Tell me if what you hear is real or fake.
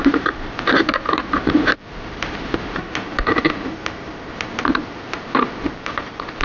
fake